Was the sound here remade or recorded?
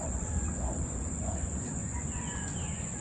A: remade